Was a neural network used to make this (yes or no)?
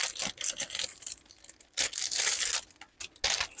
no